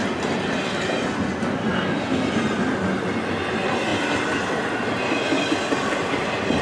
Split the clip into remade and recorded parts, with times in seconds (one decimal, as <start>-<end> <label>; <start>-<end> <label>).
0.0-1.1 remade; 1.1-3.9 recorded; 3.9-6.6 remade